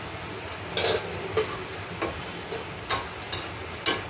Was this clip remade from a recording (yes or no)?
no